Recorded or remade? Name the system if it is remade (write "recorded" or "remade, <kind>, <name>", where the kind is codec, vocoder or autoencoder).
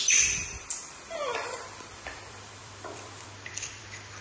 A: remade, vocoder, BigVGAN v2